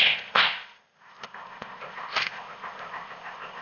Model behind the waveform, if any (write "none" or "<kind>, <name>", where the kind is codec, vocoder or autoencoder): codec, ZipCodec